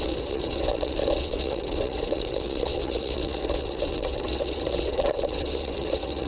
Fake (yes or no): yes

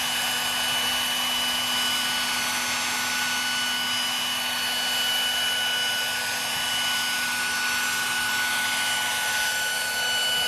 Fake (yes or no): no